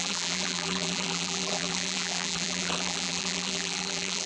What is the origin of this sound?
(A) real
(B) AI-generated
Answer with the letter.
B